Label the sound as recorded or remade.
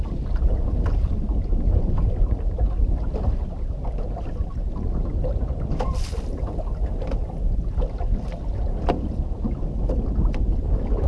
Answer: recorded